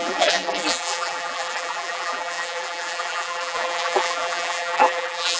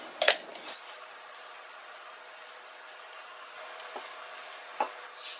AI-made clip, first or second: first